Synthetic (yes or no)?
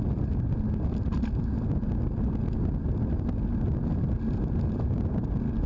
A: no